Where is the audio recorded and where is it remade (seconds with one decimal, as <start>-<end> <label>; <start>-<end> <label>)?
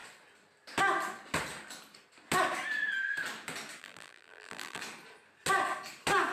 0.0-3.8 recorded; 3.8-4.8 remade; 4.8-6.3 recorded